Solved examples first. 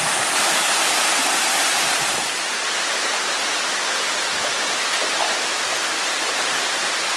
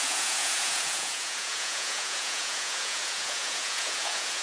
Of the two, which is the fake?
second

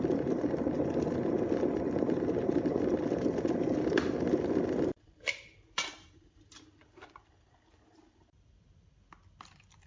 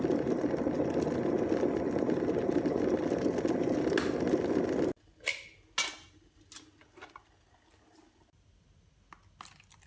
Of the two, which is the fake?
first